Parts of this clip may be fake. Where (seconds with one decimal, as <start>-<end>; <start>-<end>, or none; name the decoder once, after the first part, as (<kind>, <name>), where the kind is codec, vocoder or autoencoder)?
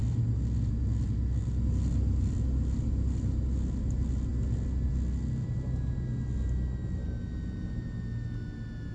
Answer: none